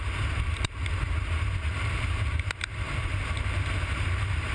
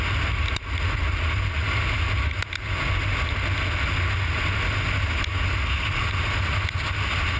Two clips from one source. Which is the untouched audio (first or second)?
second